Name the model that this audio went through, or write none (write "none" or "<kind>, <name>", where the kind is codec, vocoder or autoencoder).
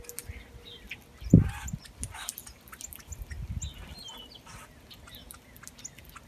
none